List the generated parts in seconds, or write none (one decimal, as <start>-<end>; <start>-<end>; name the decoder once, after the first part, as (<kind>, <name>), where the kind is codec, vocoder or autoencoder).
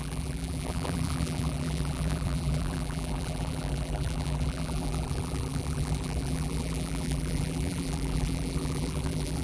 0.0-9.4 (vocoder, BigVGAN v2)